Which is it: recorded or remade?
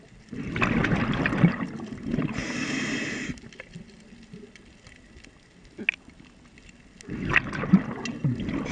recorded